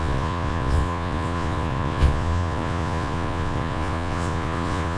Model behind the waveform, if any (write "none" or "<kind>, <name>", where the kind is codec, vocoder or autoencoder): vocoder, Vocos